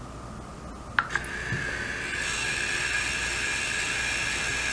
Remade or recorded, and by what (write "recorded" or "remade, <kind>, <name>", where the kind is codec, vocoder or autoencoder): recorded